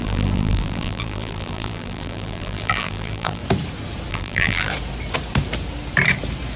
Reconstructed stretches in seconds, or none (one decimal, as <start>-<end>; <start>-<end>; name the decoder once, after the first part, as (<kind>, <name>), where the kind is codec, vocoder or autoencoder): 0.0-3.4 (vocoder, BigVGAN v2); 4.1-4.7